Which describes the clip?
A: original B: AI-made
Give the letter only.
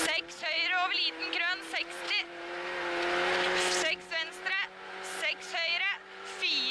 A